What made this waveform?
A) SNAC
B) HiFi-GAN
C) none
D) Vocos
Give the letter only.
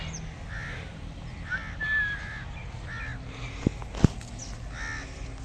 C